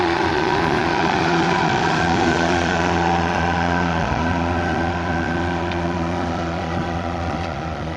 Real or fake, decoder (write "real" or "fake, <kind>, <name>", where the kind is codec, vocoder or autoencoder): fake, vocoder, Vocos